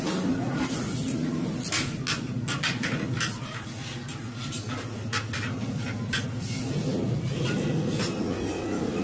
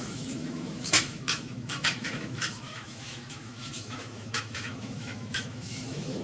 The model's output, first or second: second